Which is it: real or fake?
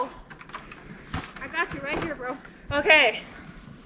real